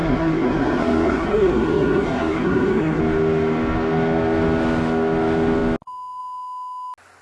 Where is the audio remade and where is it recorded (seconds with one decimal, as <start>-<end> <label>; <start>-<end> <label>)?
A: 0.0-3.0 remade; 3.0-7.2 recorded